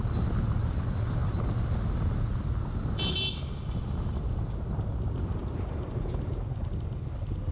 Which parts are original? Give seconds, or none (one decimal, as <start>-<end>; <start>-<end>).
0.0-5.4; 6.3-7.5